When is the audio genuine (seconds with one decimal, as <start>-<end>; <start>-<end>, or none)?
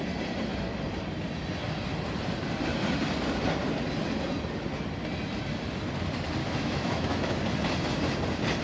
0.0-6.4; 7.4-8.6